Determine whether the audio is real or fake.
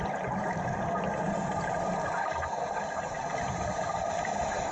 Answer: real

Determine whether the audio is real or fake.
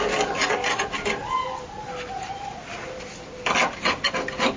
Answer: real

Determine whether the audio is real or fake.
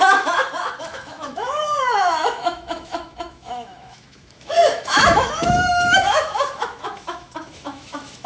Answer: fake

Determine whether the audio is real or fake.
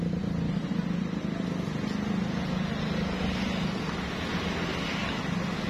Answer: real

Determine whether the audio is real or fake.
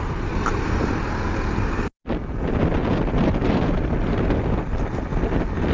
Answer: real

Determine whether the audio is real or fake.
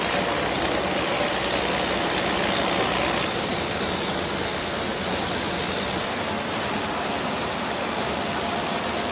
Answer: real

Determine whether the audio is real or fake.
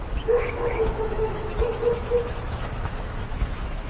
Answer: fake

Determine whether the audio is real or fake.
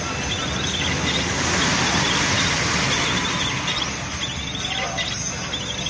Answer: real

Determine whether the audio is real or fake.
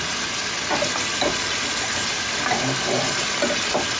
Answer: real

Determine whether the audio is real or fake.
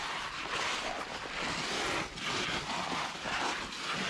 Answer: real